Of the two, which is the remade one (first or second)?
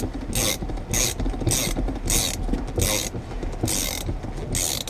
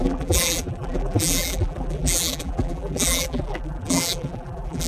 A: second